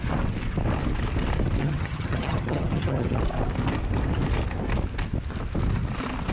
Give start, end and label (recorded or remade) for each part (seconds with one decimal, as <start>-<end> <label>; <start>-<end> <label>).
0.0-1.6 recorded; 1.6-3.2 remade; 3.2-6.3 recorded